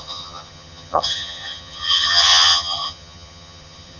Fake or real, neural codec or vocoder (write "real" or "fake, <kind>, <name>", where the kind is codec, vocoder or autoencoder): fake, vocoder, HiFi-GAN